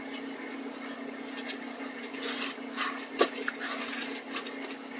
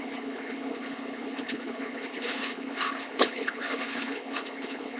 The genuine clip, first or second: first